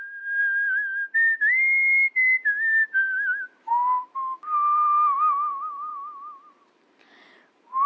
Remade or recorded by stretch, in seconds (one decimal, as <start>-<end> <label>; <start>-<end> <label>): 0.0-0.4 remade; 0.4-3.7 recorded; 3.7-7.9 remade